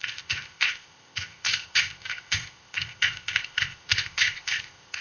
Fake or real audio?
fake